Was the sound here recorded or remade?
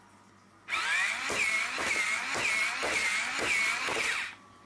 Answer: recorded